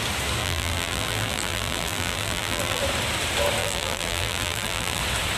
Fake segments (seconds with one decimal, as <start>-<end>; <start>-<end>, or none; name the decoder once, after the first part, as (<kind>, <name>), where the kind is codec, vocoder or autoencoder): 0.4-2.8 (vocoder, BigVGAN v2); 3.6-5.0